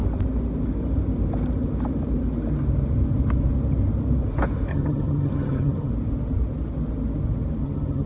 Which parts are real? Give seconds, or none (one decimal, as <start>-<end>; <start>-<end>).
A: 0.0-4.7; 5.9-7.6

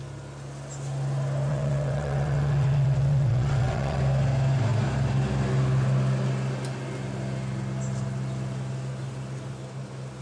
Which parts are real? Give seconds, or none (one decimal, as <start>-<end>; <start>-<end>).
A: 0.0-1.5; 4.0-10.2

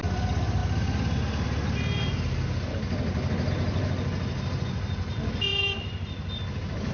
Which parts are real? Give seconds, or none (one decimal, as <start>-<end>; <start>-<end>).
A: 0.0-6.9

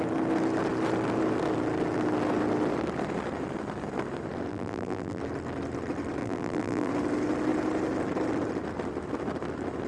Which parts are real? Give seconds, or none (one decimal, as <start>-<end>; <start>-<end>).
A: 0.0-4.5; 5.2-6.2; 6.9-9.9

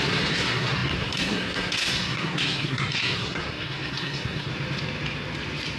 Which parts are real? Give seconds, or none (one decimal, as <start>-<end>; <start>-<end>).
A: 4.5-5.8